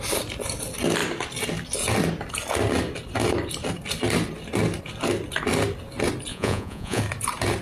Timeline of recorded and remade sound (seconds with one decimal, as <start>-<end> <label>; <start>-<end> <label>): 0.0-6.3 recorded; 6.3-7.0 remade; 7.0-7.6 recorded

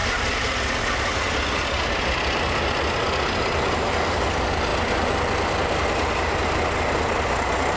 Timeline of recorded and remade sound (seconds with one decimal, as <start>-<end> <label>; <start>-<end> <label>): 0.0-7.8 recorded

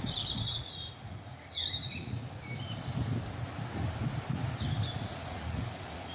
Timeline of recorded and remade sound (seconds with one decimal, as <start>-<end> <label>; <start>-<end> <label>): 0.0-2.2 remade; 2.2-5.0 recorded; 5.0-6.1 remade

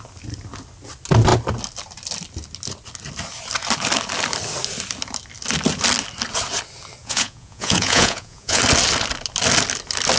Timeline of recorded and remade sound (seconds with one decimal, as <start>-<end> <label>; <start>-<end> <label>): 0.0-7.0 recorded; 7.0-8.6 remade; 8.6-10.2 recorded

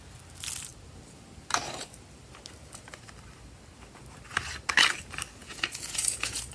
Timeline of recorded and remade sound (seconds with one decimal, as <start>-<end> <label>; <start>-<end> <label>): 0.0-5.4 recorded; 5.4-6.5 remade

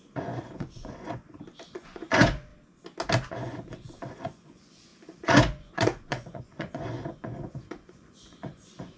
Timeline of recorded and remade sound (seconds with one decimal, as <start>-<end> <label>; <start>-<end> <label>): 0.0-1.2 remade; 1.2-1.7 recorded; 1.7-2.5 remade; 2.5-3.3 recorded; 3.3-9.0 remade

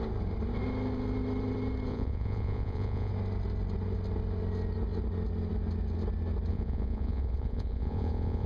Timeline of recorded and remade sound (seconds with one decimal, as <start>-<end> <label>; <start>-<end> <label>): 0.0-1.9 recorded; 1.9-3.1 remade; 3.1-6.5 recorded; 6.5-8.5 remade

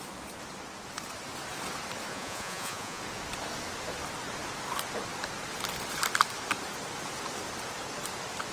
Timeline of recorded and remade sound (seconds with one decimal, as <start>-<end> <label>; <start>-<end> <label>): 0.0-2.1 recorded; 2.1-3.0 remade; 3.0-8.5 recorded